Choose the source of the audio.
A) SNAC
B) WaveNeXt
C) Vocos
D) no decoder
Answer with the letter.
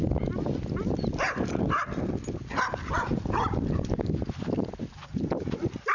D